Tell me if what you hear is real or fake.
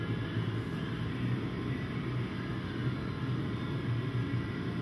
real